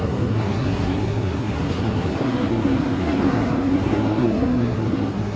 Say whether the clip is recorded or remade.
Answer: remade